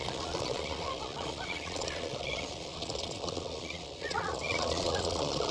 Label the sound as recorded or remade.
remade